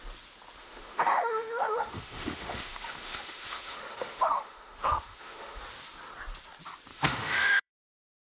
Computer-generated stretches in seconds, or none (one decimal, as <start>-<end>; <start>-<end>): 0.6-5.6; 6.9-7.7